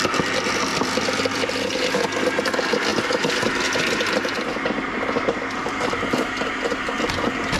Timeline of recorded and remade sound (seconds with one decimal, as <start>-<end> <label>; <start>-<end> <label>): 0.0-0.7 recorded; 0.7-1.8 remade; 1.8-2.9 recorded; 2.9-6.6 remade; 6.6-7.6 recorded

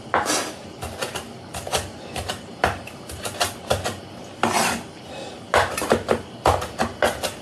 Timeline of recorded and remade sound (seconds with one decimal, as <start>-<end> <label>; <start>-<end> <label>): 0.0-7.4 recorded

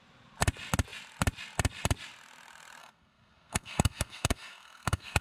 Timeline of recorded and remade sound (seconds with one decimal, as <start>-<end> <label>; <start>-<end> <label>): 0.0-2.8 recorded; 2.8-5.2 remade

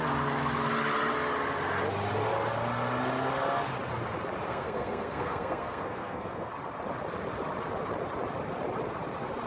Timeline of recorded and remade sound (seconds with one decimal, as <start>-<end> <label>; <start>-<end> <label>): 0.0-4.5 recorded; 4.5-6.5 remade; 6.5-9.5 recorded

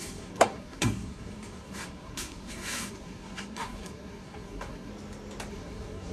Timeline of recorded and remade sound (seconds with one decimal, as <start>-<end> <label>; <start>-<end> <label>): 0.0-4.9 remade; 4.9-5.5 recorded; 5.5-6.1 remade

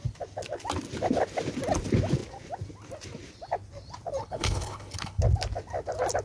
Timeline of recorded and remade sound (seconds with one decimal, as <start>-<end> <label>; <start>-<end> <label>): 0.0-4.2 recorded; 4.2-5.2 remade; 5.2-6.2 recorded